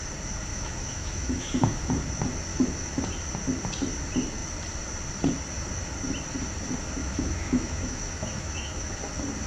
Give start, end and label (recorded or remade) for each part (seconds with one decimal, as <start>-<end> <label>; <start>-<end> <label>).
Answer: 0.0-0.5 recorded; 0.5-1.9 remade; 1.9-2.5 recorded; 2.5-3.0 remade; 3.0-7.0 recorded; 7.0-9.0 remade; 9.0-9.5 recorded